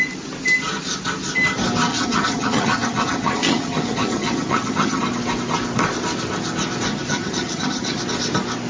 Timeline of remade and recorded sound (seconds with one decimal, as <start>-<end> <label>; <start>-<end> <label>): 0.0-1.9 recorded; 1.9-5.0 remade; 5.0-6.9 recorded; 6.9-8.0 remade; 8.0-8.7 recorded